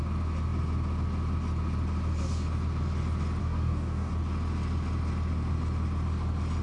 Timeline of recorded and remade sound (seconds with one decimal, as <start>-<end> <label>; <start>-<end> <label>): 0.0-3.4 recorded; 3.4-4.1 remade; 4.1-6.6 recorded